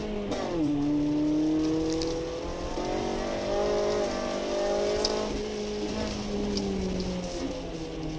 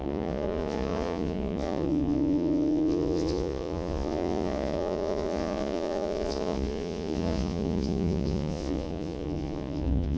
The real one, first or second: first